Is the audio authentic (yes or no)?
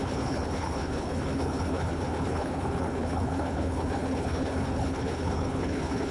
no